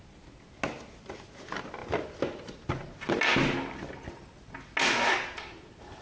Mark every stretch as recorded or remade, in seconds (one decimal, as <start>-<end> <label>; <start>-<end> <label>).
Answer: 0.0-6.0 recorded